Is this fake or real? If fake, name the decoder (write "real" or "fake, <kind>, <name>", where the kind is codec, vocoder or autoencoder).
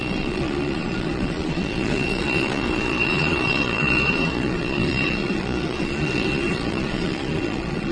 fake, vocoder, Vocos